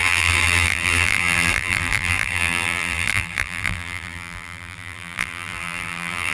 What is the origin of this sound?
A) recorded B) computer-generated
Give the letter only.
B